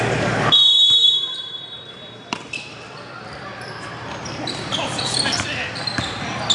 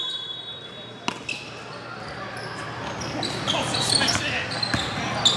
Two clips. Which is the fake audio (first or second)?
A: first